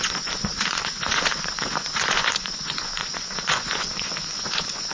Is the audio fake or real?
fake